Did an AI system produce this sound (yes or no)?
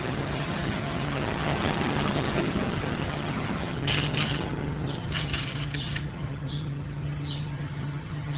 yes